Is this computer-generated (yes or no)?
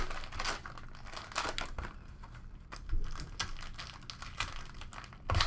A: no